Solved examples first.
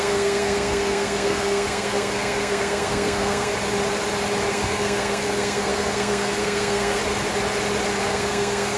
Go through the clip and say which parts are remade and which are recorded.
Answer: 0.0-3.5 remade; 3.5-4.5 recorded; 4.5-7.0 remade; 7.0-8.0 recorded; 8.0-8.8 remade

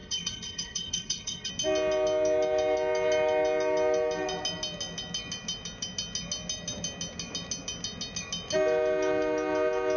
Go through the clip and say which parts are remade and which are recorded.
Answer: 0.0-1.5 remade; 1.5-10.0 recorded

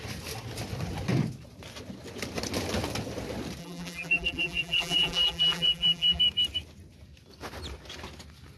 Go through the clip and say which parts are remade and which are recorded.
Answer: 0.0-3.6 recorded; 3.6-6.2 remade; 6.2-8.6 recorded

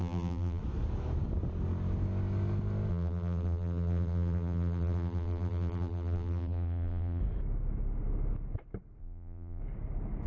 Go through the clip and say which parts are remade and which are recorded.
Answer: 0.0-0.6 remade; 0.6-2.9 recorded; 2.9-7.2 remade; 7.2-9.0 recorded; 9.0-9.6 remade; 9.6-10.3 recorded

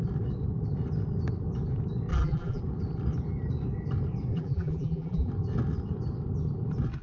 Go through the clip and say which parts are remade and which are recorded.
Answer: 0.0-2.1 recorded; 2.1-2.6 remade; 2.6-4.3 recorded; 4.3-5.3 remade; 5.3-7.0 recorded

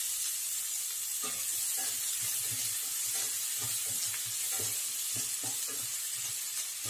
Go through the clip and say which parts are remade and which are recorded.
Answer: 0.0-6.9 recorded